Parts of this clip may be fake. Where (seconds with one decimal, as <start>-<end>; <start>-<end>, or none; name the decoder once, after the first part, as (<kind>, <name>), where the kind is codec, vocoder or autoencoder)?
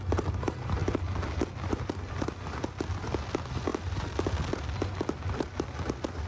none